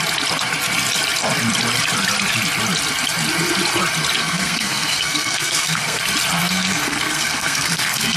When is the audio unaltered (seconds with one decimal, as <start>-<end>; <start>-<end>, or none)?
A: 0.0-4.2; 6.0-6.4